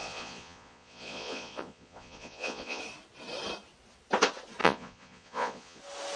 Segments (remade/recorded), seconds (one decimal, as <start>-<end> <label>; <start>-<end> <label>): 0.0-2.8 remade; 2.8-4.6 recorded; 4.6-5.8 remade; 5.8-6.2 recorded